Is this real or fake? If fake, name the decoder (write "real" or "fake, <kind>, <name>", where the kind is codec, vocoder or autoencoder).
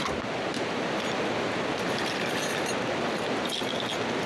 real